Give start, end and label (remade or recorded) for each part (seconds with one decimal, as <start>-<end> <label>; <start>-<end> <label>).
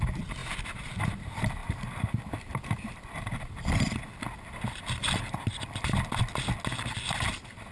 0.0-0.4 recorded; 0.4-1.0 remade; 1.0-1.6 recorded; 1.6-6.2 remade; 6.2-7.7 recorded